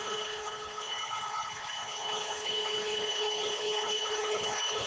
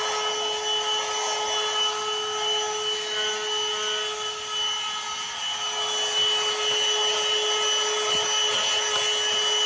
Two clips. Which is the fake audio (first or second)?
first